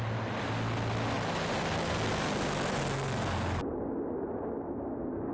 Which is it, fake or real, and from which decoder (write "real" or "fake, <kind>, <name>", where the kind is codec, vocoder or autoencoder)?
real